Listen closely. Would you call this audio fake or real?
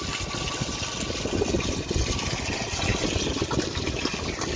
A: real